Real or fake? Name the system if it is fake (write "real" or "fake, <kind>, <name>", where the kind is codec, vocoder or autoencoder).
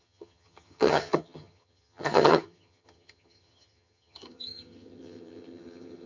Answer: fake, vocoder, HiFi-GAN